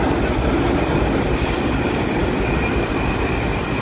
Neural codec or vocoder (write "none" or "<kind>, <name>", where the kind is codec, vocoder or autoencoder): none